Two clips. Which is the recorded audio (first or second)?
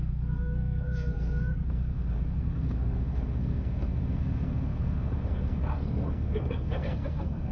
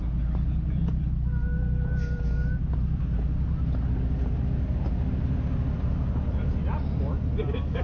second